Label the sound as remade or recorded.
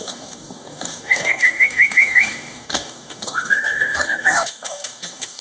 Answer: remade